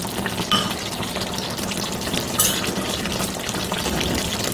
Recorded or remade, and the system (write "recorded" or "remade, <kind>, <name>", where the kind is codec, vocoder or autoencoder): recorded